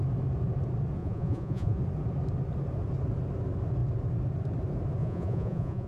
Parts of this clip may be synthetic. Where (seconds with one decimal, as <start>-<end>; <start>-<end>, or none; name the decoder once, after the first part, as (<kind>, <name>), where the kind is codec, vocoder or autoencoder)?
1.0-1.8 (vocoder, Vocos); 5.0-5.9